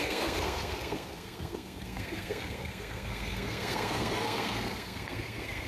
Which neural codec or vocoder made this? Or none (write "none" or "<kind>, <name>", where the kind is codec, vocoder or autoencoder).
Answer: codec, SNAC